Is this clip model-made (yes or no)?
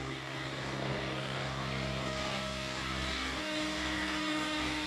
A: yes